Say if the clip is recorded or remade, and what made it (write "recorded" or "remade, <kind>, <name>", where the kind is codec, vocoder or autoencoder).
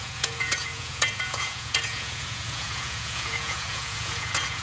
remade, vocoder, Vocos